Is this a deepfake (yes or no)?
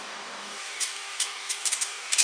yes